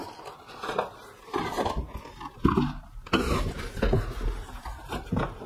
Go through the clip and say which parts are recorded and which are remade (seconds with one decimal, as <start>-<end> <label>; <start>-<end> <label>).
0.0-5.5 recorded